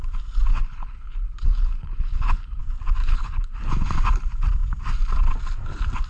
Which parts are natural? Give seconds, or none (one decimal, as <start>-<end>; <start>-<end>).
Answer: 0.0-0.5; 2.6-3.0; 3.7-6.1